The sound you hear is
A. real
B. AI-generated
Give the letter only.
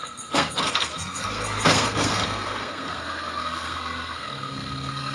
B